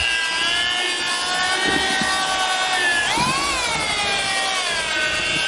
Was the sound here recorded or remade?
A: recorded